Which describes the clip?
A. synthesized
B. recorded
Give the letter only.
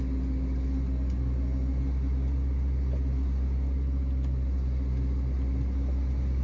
B